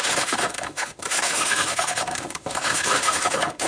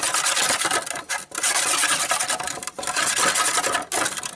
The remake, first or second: first